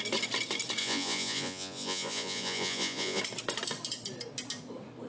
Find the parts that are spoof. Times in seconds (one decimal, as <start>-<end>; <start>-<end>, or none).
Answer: 0.8-3.2